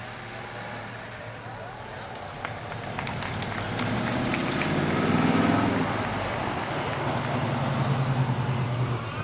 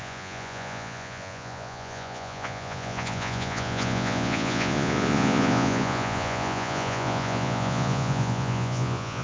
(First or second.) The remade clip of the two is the second